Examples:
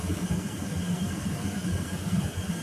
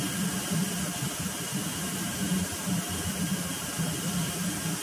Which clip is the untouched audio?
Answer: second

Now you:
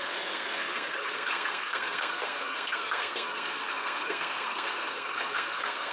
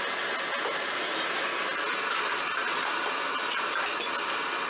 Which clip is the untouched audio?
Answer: second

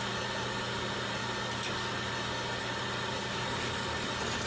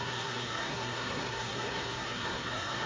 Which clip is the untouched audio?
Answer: first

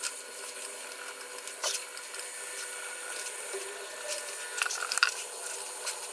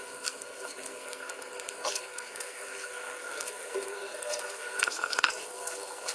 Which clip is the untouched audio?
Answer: first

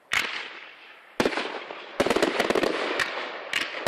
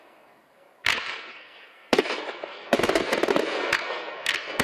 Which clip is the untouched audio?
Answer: first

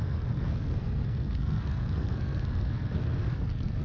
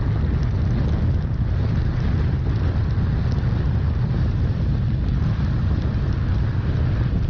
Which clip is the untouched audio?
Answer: second